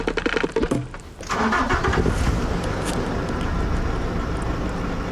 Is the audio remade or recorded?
recorded